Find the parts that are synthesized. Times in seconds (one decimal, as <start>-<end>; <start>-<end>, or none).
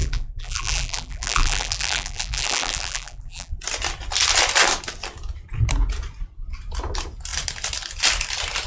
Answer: 0.0-3.5